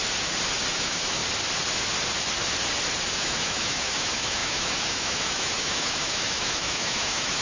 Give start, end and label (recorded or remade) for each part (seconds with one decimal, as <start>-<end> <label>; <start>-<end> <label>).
0.0-0.7 recorded; 0.7-1.2 remade; 1.2-3.1 recorded; 3.1-7.4 remade